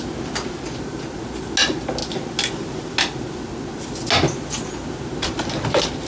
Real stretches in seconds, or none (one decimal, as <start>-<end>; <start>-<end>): 0.0-6.1